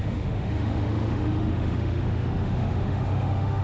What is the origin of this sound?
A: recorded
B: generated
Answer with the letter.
B